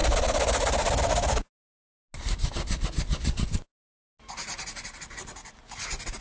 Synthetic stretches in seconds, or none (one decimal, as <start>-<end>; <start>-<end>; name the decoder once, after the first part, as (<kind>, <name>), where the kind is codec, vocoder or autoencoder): none